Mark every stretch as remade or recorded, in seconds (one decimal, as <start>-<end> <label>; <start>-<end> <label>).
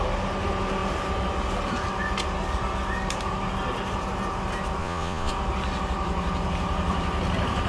0.0-4.8 recorded; 4.8-5.3 remade; 5.3-7.7 recorded